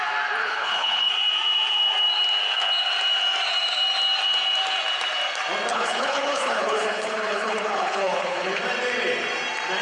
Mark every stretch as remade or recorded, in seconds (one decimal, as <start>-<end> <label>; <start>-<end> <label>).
0.0-0.4 recorded; 0.4-1.1 remade; 1.1-5.7 recorded; 5.7-8.6 remade; 8.6-9.8 recorded